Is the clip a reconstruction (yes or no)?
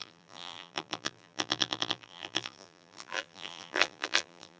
yes